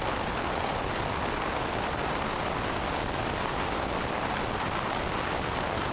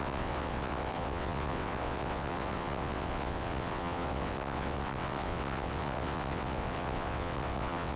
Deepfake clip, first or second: second